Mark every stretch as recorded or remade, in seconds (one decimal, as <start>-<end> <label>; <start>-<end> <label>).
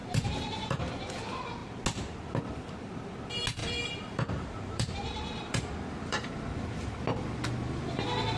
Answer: 0.0-0.8 remade; 0.8-3.6 recorded; 3.6-6.3 remade; 6.3-8.4 recorded